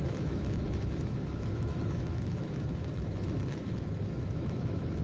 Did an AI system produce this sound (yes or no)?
yes